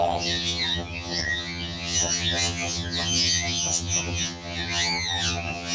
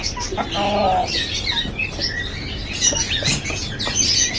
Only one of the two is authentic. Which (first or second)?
second